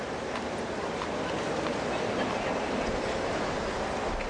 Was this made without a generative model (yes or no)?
yes